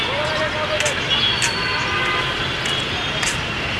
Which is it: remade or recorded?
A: recorded